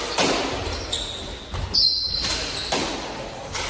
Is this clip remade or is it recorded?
recorded